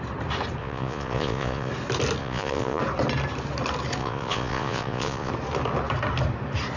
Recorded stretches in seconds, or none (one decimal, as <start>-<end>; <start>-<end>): 0.0-0.6; 1.7-2.2; 2.8-4.0; 5.3-6.8